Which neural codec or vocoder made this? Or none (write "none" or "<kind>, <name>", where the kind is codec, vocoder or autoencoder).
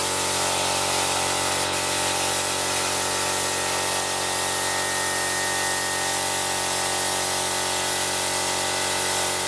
none